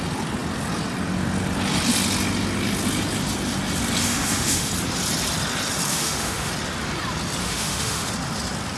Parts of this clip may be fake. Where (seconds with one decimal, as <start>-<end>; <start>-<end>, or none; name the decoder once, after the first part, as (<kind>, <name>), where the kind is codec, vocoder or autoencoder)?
4.0-4.7 (autoencoder, DAC-VAE); 5.9-6.5; 7.4-8.1